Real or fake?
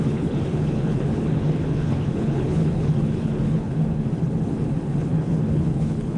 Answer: fake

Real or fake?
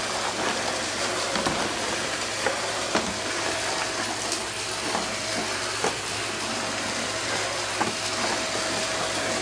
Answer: real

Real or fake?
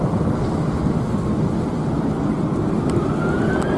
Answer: real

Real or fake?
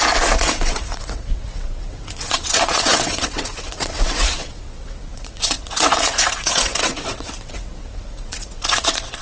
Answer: fake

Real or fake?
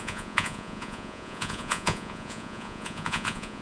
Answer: fake